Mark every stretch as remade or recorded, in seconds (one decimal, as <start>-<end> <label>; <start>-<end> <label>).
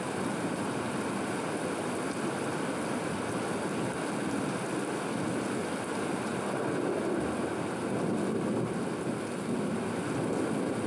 0.0-10.9 recorded